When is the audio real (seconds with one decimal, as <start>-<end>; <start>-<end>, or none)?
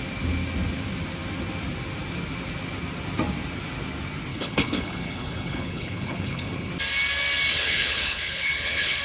0.0-4.3; 6.7-7.5